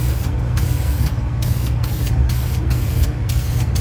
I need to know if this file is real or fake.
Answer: fake